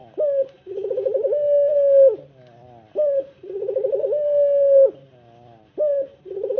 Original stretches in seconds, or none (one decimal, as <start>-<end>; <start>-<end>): 0.0-6.6